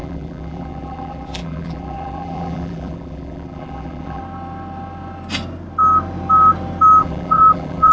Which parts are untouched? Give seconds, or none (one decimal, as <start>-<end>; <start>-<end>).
4.2-7.0